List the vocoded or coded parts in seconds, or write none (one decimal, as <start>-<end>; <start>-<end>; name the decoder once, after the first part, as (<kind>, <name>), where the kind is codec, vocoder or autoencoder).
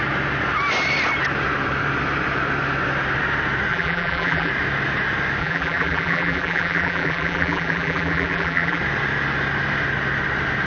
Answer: 3.7-4.5 (vocoder, BigVGAN v2); 5.4-8.8